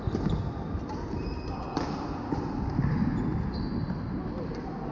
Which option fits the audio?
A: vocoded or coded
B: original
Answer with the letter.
B